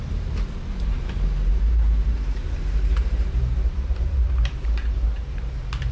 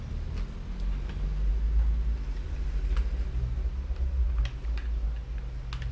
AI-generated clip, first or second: first